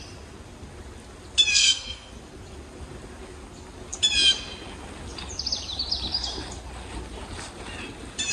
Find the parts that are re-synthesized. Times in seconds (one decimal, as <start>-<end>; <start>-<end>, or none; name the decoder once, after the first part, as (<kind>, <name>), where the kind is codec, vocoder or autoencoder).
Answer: 1.5-2.1 (codec, SNAC)